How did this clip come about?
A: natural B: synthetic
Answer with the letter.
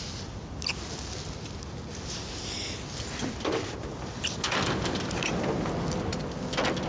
A